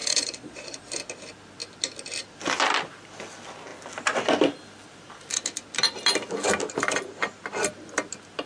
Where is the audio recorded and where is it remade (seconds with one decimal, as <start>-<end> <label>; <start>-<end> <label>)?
0.0-0.8 remade; 0.8-8.5 recorded